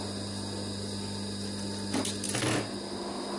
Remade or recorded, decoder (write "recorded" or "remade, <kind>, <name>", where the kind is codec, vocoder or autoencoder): recorded